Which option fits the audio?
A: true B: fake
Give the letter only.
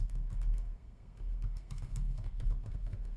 B